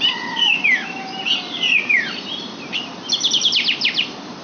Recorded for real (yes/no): no